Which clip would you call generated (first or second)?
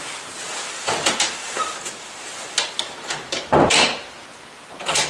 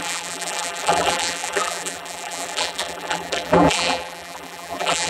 second